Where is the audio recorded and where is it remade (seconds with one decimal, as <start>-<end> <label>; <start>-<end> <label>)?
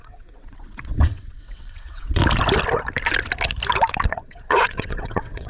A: 0.0-2.2 remade; 2.2-4.1 recorded; 4.1-5.5 remade